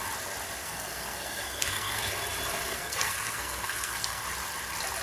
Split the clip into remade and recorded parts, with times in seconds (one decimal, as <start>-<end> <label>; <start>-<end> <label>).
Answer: 0.0-0.6 recorded; 0.6-2.1 remade; 2.1-2.7 recorded; 2.7-4.2 remade; 4.2-5.0 recorded